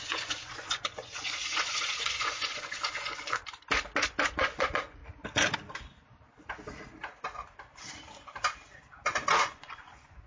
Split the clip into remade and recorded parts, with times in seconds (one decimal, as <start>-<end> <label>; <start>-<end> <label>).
0.0-3.4 remade; 3.4-4.3 recorded; 4.3-5.0 remade; 5.0-9.4 recorded; 9.4-10.3 remade